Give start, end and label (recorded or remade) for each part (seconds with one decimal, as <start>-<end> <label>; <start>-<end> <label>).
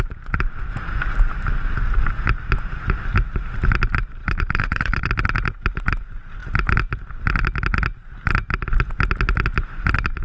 0.0-4.2 recorded; 4.2-5.1 remade; 5.1-10.2 recorded